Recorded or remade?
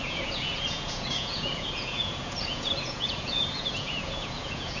remade